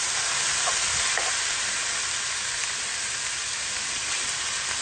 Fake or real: real